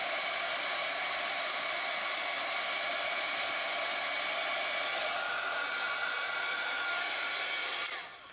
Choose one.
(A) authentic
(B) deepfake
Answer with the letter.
A